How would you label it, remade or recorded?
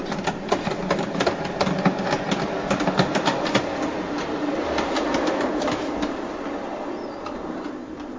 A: recorded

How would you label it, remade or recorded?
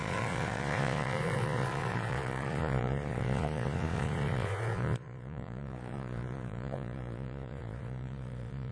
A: remade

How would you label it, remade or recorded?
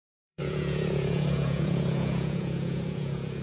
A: remade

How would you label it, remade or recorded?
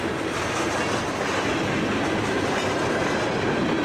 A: recorded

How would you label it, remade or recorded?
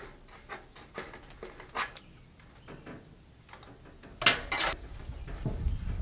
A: recorded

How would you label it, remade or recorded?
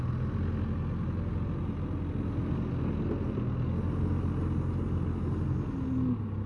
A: recorded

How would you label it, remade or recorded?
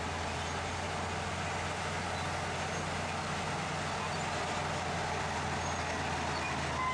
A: recorded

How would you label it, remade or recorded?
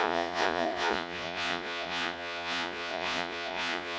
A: remade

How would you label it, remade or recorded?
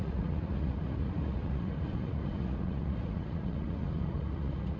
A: remade